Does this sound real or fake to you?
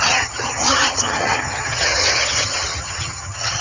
fake